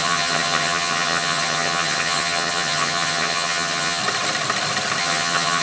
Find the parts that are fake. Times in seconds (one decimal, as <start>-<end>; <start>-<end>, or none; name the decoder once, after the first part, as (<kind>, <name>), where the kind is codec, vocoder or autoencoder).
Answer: 0.0-4.0 (vocoder, HiFi-GAN); 5.0-5.6